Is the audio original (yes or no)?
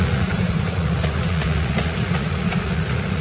no